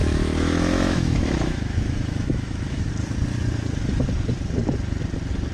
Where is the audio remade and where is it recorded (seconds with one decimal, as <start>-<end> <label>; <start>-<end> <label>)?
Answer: 0.0-2.9 remade; 2.9-5.5 recorded